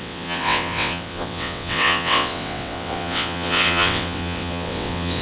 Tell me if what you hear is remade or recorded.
remade